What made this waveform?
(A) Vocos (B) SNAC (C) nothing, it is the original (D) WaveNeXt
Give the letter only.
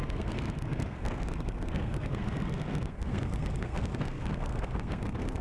B